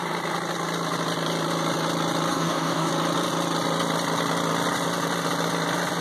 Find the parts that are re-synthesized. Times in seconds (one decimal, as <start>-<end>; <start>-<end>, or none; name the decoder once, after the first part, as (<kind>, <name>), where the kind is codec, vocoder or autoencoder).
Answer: 2.3-2.9 (codec, DAC)

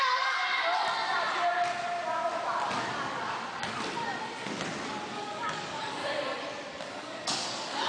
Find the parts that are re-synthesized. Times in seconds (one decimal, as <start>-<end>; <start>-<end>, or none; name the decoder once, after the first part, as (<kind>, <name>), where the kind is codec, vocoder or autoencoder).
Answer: 0.0-0.4 (codec, DAC); 5.1-6.0; 6.7-7.9

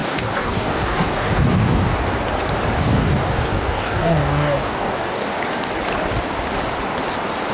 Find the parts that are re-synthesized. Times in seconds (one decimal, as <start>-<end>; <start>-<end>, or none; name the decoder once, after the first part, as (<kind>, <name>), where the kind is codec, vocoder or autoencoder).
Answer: 0.0-1.9 (codec, DAC); 2.8-5.3

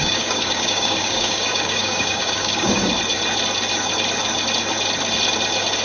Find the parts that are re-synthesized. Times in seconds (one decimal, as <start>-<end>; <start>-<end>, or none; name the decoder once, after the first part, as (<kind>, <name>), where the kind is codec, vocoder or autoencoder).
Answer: 0.0-2.9 (codec, DAC)

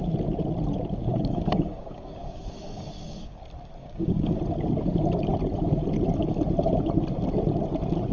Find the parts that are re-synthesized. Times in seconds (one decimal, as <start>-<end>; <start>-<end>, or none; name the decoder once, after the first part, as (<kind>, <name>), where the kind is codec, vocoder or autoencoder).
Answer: 1.0-3.4 (codec, DAC); 3.8-4.4

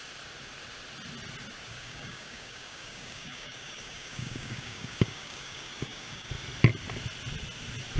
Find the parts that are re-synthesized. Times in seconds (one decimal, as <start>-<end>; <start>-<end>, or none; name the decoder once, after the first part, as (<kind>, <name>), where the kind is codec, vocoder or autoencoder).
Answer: 1.7-6.3 (codec, DAC)

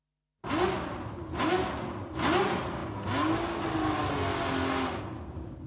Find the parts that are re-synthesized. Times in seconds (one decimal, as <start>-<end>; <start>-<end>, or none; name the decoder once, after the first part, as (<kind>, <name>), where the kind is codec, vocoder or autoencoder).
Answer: none